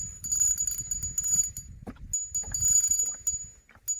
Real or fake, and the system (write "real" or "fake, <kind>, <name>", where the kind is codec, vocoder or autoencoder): real